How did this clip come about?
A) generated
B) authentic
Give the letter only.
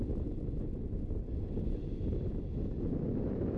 B